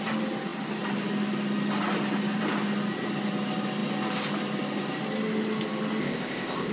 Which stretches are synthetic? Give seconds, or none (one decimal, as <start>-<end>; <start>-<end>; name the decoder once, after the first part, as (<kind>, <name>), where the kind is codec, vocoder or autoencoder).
6.0-6.7 (codec, ZipCodec)